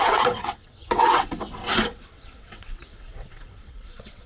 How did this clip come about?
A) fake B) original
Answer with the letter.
A